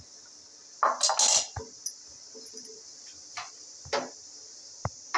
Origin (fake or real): real